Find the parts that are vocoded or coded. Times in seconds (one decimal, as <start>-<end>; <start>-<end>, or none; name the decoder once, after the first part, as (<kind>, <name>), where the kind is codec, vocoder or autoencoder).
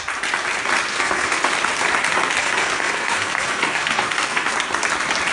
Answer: 0.9-1.4 (codec, SNAC); 2.4-4.5